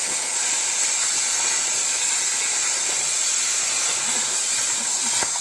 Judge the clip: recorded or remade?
recorded